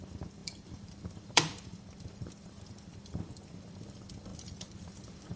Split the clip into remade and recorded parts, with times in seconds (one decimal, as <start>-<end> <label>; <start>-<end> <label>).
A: 0.0-5.4 remade